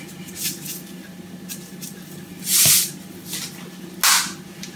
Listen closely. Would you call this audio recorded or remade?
recorded